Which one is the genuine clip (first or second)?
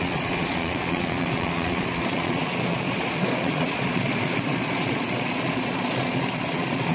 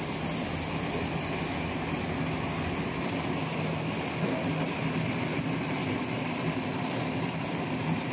second